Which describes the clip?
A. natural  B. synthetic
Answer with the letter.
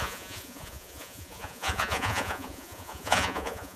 B